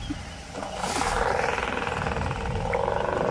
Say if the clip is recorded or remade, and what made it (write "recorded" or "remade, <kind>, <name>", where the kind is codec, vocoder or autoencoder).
recorded